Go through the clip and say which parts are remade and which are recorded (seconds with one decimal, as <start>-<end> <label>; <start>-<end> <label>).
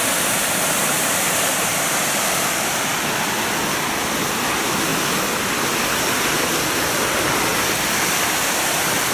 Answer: 0.0-4.9 remade; 4.9-6.0 recorded; 6.0-7.5 remade; 7.5-8.4 recorded; 8.4-9.1 remade